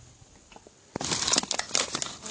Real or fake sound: real